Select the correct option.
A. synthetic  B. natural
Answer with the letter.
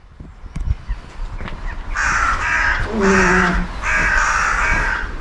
B